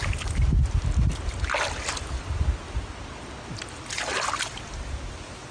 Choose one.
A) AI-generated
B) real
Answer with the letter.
B